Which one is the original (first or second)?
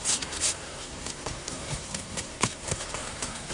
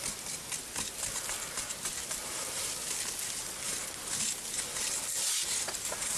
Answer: second